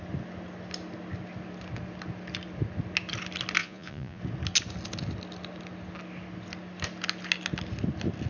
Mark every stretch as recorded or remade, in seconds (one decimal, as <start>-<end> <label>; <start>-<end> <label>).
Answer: 0.0-3.6 recorded; 3.6-4.2 remade; 4.2-8.3 recorded